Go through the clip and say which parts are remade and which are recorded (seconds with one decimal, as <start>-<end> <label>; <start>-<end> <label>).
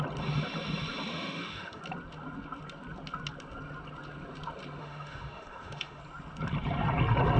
0.0-1.1 recorded; 1.1-1.8 remade; 1.8-4.8 recorded; 4.8-6.0 remade; 6.0-7.4 recorded